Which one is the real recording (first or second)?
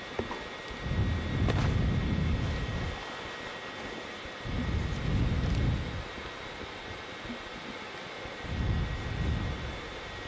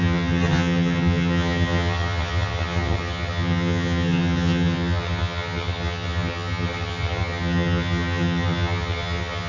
first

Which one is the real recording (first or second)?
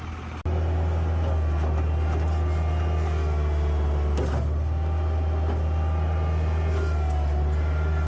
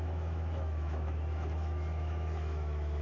first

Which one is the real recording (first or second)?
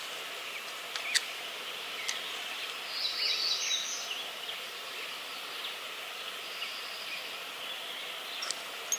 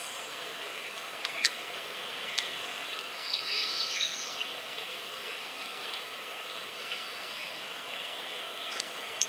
first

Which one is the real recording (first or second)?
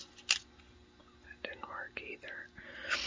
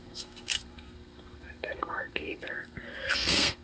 first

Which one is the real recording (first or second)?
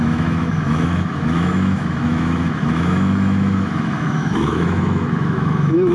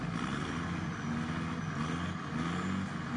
second